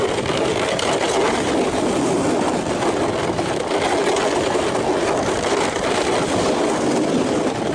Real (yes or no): yes